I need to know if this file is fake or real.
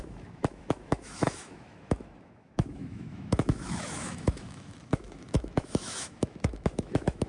fake